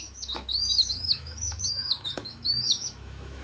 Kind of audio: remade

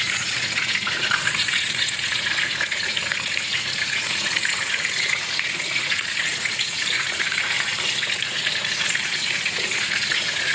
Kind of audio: remade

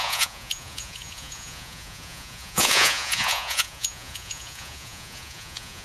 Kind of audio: remade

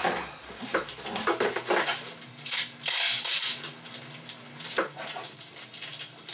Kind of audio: recorded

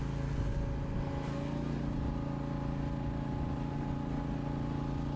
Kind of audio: recorded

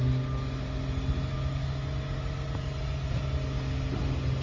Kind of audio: recorded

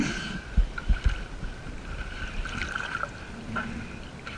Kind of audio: recorded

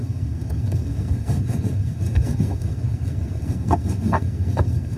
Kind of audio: remade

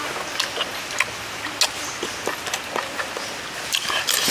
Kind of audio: recorded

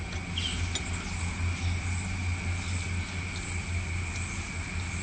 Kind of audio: recorded